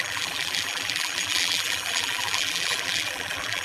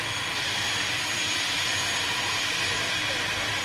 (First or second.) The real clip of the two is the second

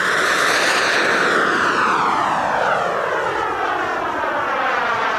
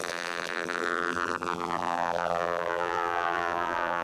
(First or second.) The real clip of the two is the first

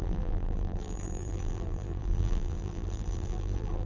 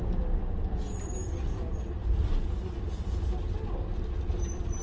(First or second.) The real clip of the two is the second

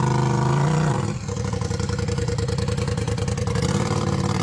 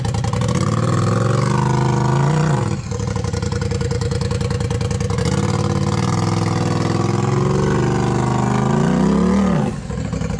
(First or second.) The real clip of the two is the second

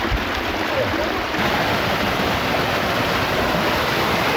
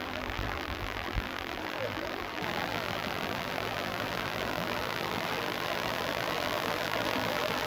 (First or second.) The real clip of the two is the first